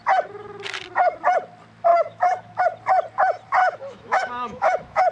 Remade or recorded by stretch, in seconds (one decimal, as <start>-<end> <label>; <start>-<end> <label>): 0.0-1.9 recorded; 1.9-2.6 remade; 2.6-3.6 recorded; 3.6-5.1 remade